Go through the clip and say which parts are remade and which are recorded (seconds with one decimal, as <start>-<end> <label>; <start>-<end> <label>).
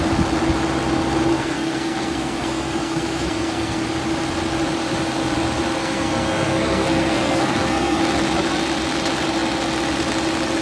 0.0-1.3 recorded; 1.3-3.8 remade; 3.8-5.8 recorded; 5.8-8.0 remade; 8.0-10.6 recorded